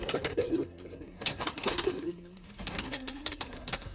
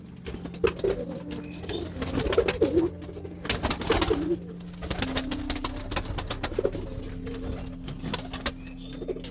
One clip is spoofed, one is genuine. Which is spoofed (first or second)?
first